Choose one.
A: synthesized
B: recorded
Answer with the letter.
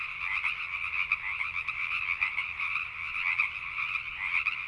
B